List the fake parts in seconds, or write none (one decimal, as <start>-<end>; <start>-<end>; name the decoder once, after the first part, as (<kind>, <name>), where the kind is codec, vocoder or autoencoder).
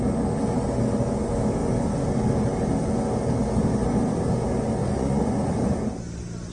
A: 4.8-5.8 (vocoder, Vocos)